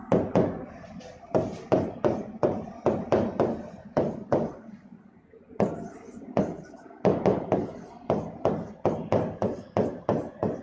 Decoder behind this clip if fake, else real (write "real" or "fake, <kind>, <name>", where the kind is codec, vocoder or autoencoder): fake, vocoder, BigVGAN v2